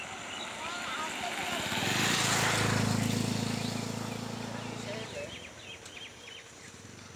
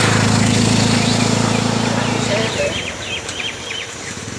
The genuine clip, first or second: first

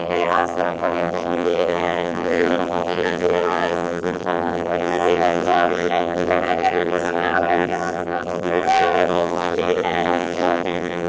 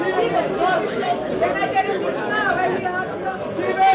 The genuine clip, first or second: second